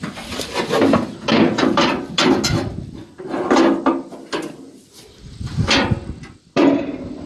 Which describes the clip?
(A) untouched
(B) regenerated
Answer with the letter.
A